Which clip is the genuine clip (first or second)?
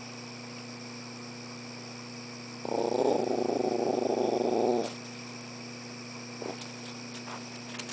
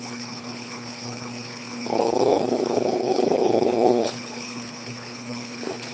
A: first